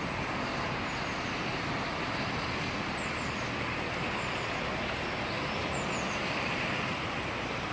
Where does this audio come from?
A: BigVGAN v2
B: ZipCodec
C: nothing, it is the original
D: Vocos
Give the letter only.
C